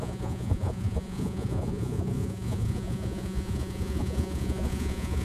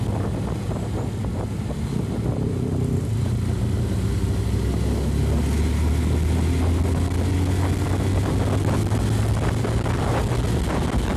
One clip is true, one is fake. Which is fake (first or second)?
first